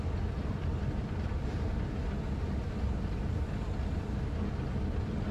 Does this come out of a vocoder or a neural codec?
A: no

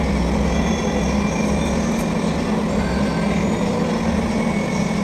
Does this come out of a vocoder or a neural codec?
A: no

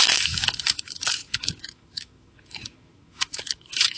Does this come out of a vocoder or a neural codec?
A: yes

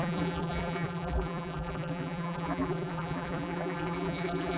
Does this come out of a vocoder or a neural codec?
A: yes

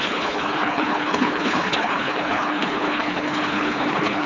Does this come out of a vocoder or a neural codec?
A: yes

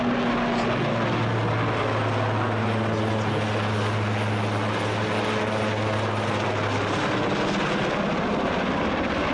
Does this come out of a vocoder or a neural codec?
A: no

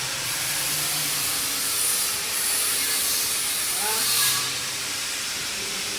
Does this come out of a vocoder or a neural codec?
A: yes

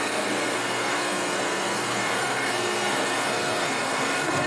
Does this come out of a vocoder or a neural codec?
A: yes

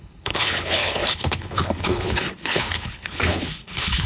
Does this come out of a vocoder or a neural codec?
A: yes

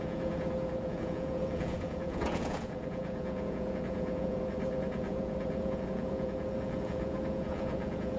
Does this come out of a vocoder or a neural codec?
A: yes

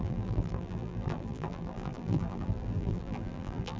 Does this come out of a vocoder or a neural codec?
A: yes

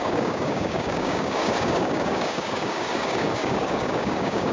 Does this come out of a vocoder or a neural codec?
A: yes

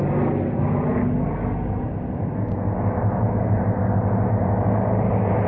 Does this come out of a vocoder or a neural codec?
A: no